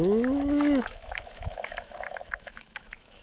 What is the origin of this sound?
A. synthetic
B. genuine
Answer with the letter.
A